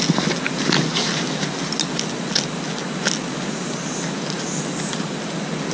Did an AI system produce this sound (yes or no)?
no